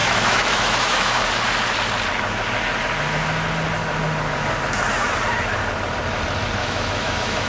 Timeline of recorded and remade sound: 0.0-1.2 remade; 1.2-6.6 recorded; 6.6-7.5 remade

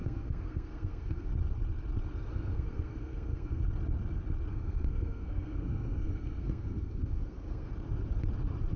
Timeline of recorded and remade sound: 0.0-1.3 remade; 1.3-2.3 recorded; 2.3-3.6 remade; 3.6-4.5 recorded; 4.5-7.7 remade; 7.7-8.8 recorded